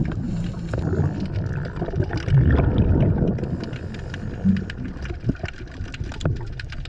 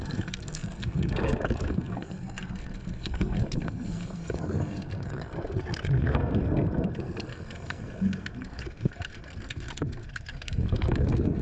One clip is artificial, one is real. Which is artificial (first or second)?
second